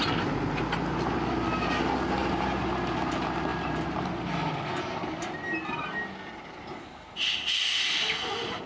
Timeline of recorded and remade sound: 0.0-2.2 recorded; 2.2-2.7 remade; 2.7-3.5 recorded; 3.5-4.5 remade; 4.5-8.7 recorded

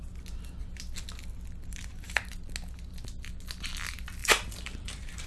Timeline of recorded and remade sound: 0.0-4.2 recorded; 4.2-5.3 remade

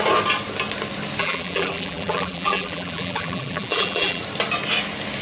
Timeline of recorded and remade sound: 0.0-1.2 recorded; 1.2-4.2 remade; 4.2-5.2 recorded

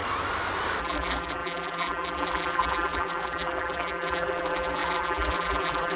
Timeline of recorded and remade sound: 0.0-0.8 recorded; 0.8-6.0 remade

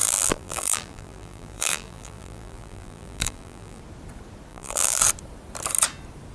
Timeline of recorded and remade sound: 0.0-3.8 remade; 3.8-4.5 recorded; 4.5-5.0 remade; 5.0-6.3 recorded